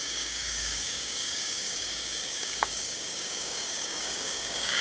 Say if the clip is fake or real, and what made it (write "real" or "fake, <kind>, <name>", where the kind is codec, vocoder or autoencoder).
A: fake, codec, DAC